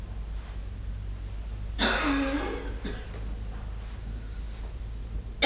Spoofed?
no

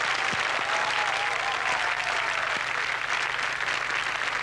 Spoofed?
no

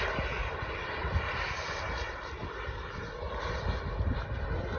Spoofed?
no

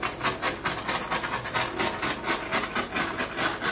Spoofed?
no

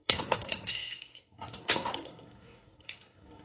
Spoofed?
yes